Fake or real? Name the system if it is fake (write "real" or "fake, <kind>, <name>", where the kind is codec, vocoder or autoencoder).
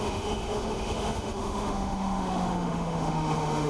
fake, autoencoder, DAC-VAE